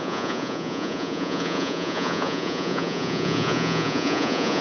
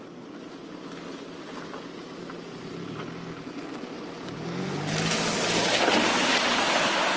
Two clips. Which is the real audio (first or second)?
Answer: second